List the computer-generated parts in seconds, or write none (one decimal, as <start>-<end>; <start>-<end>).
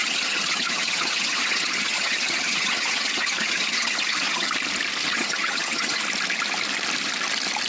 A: 0.0-4.5; 5.0-6.0